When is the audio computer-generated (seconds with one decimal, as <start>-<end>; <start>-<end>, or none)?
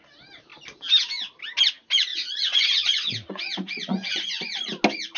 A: 2.1-4.4